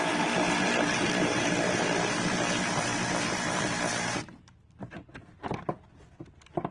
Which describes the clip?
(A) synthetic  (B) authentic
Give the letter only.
B